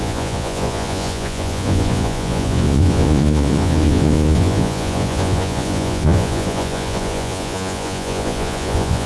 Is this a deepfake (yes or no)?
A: yes